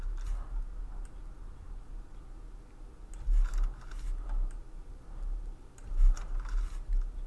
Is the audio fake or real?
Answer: real